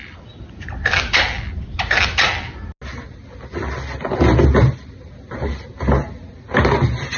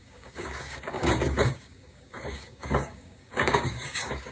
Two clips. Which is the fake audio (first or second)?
second